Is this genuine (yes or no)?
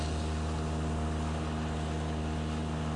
yes